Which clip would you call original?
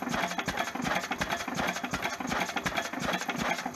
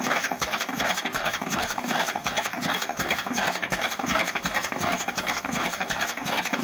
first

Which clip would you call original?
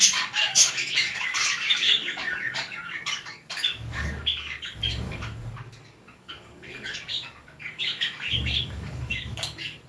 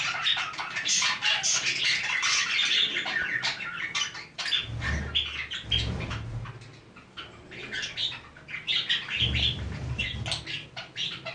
second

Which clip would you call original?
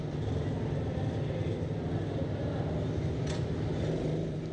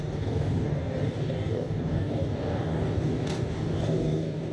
first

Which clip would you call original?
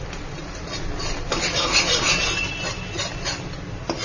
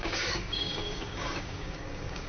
first